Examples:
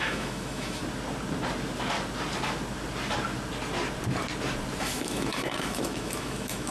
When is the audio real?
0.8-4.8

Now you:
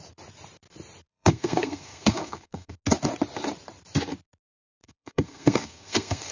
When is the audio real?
0.0-1.1; 2.7-4.8

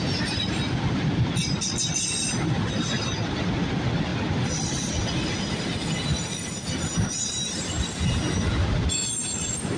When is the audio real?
0.0-9.8